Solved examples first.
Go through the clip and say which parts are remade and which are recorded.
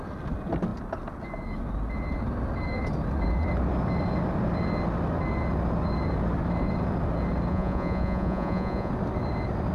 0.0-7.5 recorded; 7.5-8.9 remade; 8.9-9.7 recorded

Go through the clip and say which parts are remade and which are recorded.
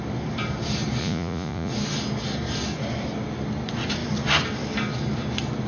0.0-1.0 recorded; 1.0-1.7 remade; 1.7-5.7 recorded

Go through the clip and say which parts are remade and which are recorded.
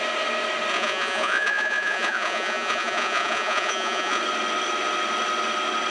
0.0-0.7 recorded; 0.7-4.2 remade; 4.2-5.9 recorded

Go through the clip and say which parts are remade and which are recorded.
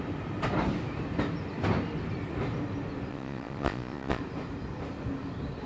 0.0-3.1 recorded; 3.1-4.2 remade; 4.2-5.7 recorded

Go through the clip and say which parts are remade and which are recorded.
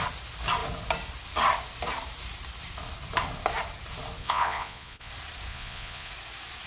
0.0-4.2 recorded; 4.2-5.1 remade; 5.1-5.5 recorded; 5.5-6.1 remade; 6.1-6.7 recorded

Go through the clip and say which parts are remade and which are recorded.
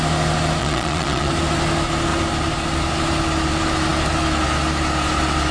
0.0-0.6 recorded; 0.6-1.3 remade; 1.3-5.5 recorded